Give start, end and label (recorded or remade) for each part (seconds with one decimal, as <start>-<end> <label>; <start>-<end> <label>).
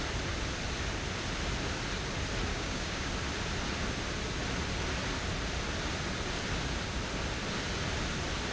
0.0-2.5 recorded; 2.5-3.1 remade; 3.1-8.5 recorded